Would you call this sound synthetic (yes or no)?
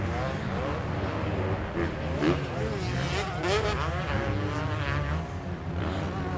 no